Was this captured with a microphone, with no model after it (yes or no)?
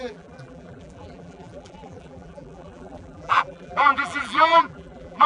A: no